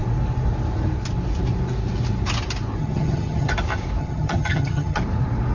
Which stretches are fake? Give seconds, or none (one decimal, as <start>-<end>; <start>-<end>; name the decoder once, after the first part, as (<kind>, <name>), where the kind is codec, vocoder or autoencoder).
2.8-3.5 (vocoder, HiFi-GAN); 4.0-5.0

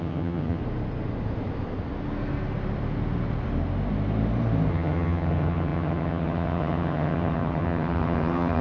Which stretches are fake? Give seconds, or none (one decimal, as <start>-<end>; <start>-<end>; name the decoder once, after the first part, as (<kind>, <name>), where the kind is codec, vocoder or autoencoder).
0.0-0.6 (vocoder, HiFi-GAN); 4.7-8.6

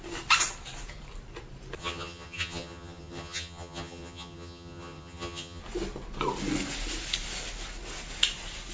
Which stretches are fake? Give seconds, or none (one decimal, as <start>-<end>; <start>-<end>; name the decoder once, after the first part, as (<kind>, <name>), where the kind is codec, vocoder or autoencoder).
1.8-5.6 (vocoder, HiFi-GAN)

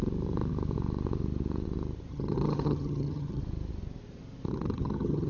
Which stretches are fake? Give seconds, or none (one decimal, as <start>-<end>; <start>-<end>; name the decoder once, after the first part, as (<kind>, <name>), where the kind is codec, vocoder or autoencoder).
2.1-3.4 (vocoder, HiFi-GAN); 4.5-5.3

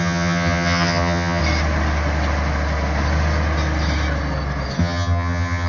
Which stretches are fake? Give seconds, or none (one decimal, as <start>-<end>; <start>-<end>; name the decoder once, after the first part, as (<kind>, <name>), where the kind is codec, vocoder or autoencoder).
0.0-1.4 (vocoder, HiFi-GAN); 4.8-5.7

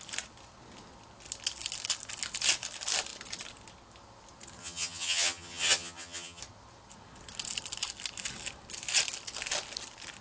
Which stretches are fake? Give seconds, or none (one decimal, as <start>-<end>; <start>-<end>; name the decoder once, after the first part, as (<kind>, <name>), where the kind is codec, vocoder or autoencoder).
4.6-6.4 (vocoder, HiFi-GAN)

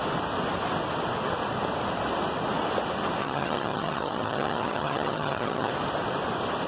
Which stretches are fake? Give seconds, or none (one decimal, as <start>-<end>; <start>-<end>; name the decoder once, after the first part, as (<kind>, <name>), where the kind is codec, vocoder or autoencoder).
3.2-5.7 (vocoder, HiFi-GAN)

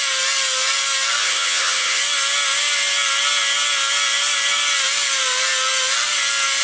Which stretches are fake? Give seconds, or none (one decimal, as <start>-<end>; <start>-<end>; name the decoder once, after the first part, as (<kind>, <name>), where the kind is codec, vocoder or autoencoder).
1.2-2.0 (vocoder, HiFi-GAN)